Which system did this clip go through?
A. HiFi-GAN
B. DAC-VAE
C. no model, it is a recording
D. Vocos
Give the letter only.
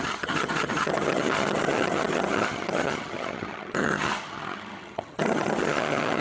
A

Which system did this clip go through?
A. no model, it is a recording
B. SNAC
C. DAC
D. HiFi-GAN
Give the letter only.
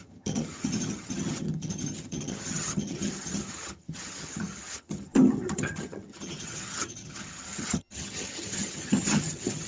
D